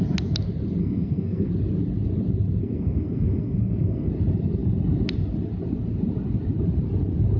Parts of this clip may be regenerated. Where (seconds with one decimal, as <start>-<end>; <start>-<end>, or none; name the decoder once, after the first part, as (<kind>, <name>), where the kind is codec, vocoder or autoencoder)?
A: 0.8-1.5 (codec, SNAC); 2.6-4.1